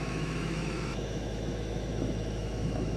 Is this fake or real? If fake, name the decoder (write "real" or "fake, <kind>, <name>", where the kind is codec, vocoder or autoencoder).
fake, autoencoder, DAC-VAE